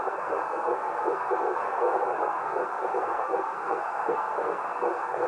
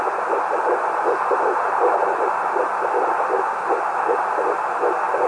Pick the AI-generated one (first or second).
first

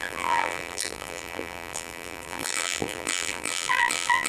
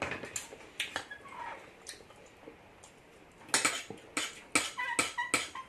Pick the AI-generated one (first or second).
first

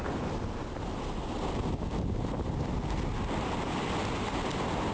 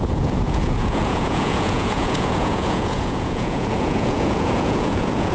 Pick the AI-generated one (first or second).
second